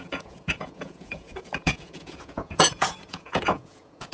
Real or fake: fake